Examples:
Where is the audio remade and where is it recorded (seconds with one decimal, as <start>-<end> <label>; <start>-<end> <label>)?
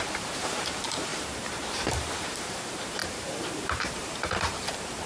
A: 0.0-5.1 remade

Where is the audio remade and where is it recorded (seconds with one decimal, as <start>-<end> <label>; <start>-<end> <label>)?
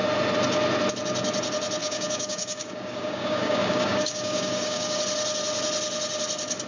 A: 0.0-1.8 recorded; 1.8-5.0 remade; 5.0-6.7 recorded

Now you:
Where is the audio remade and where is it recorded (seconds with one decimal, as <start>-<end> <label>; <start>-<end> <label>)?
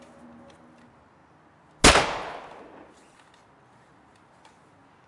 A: 0.0-5.1 recorded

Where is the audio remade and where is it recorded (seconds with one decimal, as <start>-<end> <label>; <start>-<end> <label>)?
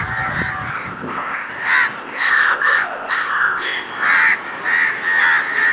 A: 0.0-0.7 recorded; 0.7-1.5 remade; 1.5-2.0 recorded; 2.0-3.9 remade; 3.9-5.7 recorded